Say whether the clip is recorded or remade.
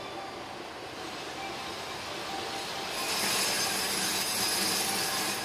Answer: recorded